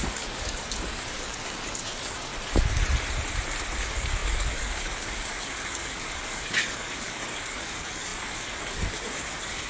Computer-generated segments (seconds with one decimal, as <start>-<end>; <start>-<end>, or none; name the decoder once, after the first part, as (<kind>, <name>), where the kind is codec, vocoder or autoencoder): 0.0-2.3 (codec, DAC); 3.8-9.7

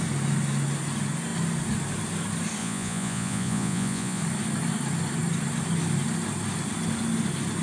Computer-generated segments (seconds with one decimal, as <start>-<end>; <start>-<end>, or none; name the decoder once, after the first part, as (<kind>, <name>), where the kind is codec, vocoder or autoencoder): 2.6-4.2 (vocoder, Vocos)

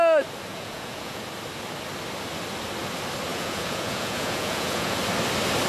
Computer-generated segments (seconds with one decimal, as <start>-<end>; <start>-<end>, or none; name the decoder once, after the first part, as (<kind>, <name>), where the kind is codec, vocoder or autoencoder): 0.5-1.2 (vocoder, Vocos); 3.3-5.0

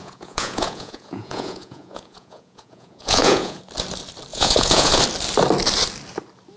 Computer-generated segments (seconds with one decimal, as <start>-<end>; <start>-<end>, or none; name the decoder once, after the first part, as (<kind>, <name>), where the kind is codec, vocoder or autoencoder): 0.0-3.6 (vocoder, Vocos); 4.3-5.0

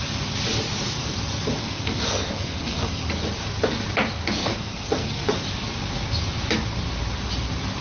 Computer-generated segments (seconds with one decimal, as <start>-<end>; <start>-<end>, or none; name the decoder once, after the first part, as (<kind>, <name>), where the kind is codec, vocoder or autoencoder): 1.6-3.0 (codec, SNAC); 4.4-5.3